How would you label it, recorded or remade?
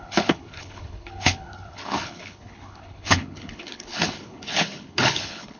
remade